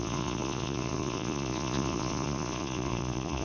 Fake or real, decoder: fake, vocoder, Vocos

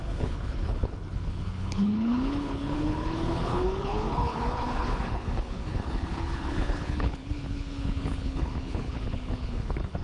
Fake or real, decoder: fake, codec, HILCodec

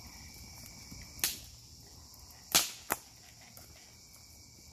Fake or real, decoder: real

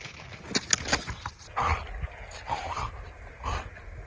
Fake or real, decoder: real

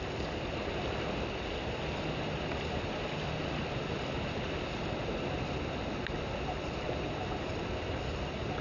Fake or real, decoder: real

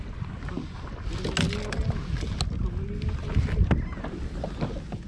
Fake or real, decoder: real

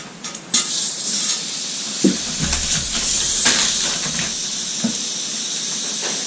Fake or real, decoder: real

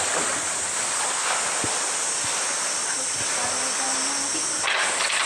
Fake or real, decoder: real